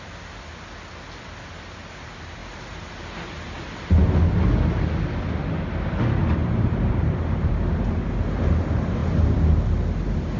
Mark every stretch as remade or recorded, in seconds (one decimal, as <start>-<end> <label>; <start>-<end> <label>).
0.0-6.4 recorded; 6.4-7.5 remade; 7.5-10.4 recorded